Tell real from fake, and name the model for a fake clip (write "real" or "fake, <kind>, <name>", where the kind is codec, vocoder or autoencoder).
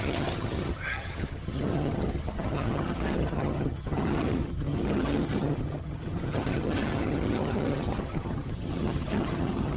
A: fake, vocoder, HiFi-GAN